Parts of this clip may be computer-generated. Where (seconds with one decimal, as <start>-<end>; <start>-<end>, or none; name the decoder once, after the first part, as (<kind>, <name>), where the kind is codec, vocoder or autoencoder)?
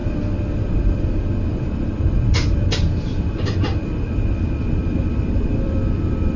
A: 0.8-6.4 (vocoder, BigVGAN v2)